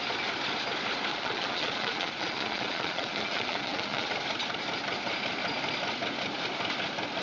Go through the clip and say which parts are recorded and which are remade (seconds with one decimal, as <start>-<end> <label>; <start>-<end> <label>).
0.0-1.1 recorded; 1.1-4.1 remade; 4.1-7.2 recorded